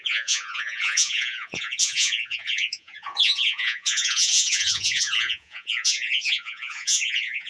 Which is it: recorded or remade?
remade